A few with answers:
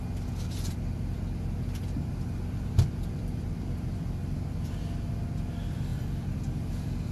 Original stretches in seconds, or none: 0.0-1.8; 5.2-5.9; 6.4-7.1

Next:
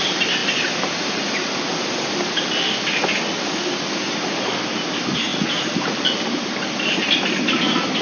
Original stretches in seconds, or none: 0.0-8.0

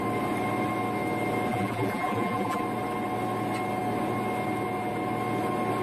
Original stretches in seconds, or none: 0.0-1.5; 2.6-5.8

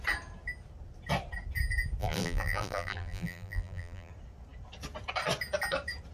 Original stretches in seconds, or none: 0.0-2.0; 4.1-6.1

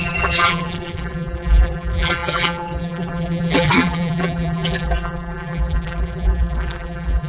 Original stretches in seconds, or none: none